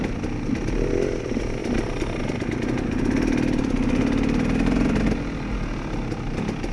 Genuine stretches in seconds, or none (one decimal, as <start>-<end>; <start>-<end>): 0.0-6.7